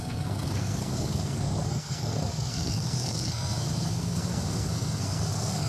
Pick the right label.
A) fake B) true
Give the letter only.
A